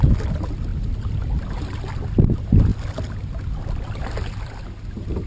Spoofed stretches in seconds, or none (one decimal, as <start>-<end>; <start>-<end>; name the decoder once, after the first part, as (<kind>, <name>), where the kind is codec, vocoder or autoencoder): none

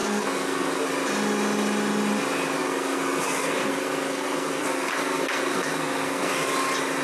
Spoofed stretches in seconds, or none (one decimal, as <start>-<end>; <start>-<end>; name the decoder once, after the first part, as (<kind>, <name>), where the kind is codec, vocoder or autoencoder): 0.0-0.8 (codec, SNAC); 2.6-6.5

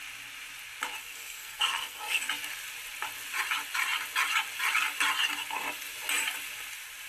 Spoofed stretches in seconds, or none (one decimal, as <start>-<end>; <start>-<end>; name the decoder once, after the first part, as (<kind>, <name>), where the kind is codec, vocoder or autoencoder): 1.0-2.2 (codec, SNAC)

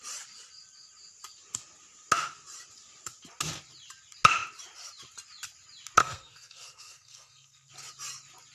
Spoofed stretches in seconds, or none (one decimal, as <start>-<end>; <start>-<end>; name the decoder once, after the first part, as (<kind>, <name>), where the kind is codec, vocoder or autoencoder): 6.0-7.7 (codec, SNAC)

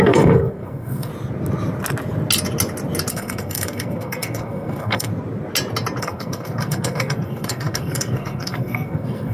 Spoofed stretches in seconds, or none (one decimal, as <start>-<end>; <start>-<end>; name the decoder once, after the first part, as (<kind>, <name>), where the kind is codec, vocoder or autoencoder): 0.0-1.1 (codec, SNAC); 3.1-5.1; 6.0-9.3

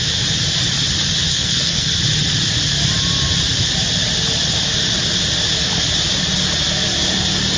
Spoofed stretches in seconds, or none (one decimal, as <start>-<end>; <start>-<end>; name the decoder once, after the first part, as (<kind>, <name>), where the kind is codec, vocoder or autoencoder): 1.3-2.0 (codec, SNAC)

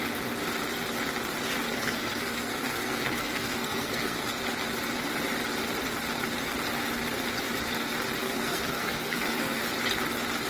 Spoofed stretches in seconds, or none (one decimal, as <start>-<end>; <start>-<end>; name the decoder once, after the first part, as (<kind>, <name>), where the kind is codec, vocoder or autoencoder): 1.7-4.4 (codec, SNAC); 8.2-9.6